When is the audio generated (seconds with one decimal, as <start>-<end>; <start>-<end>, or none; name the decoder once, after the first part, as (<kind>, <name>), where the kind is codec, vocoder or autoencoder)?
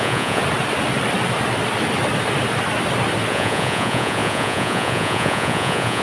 0.0-0.4 (vocoder, Vocos); 3.3-6.0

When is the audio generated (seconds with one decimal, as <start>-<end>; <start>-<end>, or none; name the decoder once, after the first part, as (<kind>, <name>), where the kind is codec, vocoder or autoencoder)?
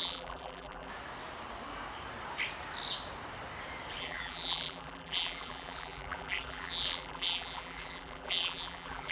0.0-0.9 (vocoder, BigVGAN v2); 4.0-9.1